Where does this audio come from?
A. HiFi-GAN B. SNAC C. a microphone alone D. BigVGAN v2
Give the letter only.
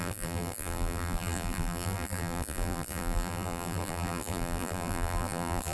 D